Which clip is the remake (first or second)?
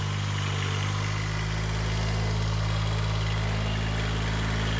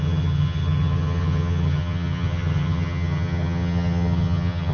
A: second